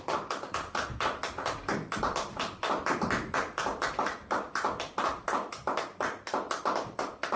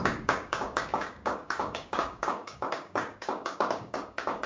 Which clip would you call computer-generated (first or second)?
second